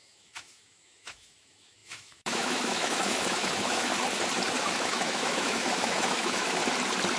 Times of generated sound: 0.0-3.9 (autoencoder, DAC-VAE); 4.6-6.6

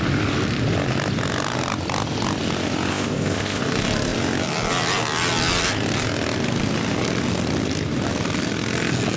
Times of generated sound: 2.9-3.6 (codec, ZipCodec)

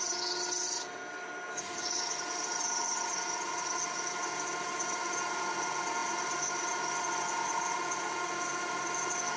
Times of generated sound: none

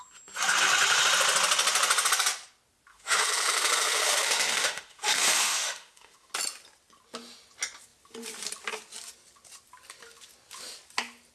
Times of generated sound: 2.9-6.3 (autoencoder, DAC-VAE)

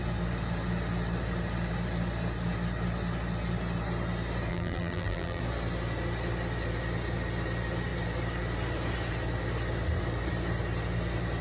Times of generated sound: 4.5-5.4 (vocoder, BigVGAN v2)

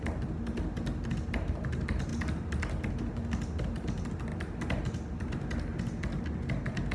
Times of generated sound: none

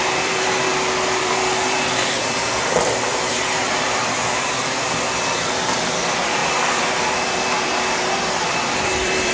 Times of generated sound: 0.0-0.7 (vocoder, BigVGAN v2); 1.2-6.4; 6.9-9.3